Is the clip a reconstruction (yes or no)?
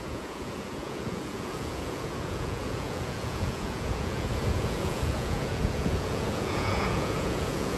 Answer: yes